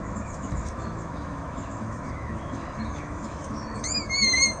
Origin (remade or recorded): remade